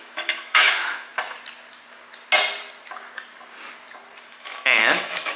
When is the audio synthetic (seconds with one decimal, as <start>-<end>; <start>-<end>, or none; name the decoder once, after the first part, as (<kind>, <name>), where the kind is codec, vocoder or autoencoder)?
0.0-1.1 (autoencoder, DAC-VAE); 4.3-5.4

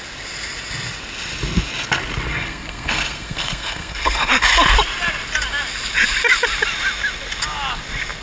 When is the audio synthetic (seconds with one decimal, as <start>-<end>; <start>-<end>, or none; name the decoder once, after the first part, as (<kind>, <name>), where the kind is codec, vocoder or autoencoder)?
2.3-4.3 (codec, SNAC)